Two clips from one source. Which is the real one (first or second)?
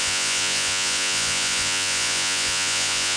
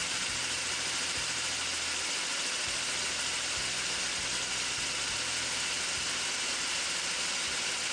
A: second